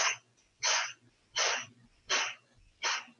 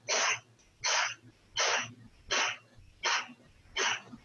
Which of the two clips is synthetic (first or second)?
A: first